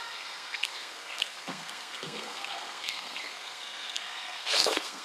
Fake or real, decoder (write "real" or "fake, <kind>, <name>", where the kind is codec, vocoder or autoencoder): fake, codec, SNAC